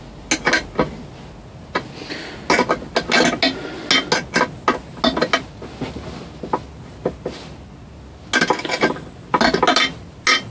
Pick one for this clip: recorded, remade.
recorded